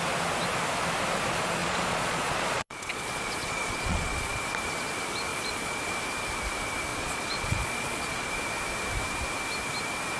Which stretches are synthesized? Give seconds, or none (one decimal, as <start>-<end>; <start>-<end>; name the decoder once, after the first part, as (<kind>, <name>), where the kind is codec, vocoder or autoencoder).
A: 1.6-4.4 (vocoder, Vocos); 5.3-5.8; 6.9-8.3